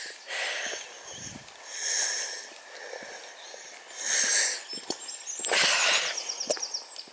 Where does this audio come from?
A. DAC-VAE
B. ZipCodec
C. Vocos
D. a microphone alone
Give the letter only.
D